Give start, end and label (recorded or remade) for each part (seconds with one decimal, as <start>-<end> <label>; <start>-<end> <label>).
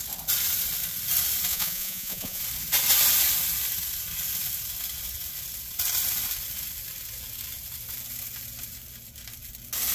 0.0-1.5 recorded; 1.5-2.4 remade; 2.4-9.9 recorded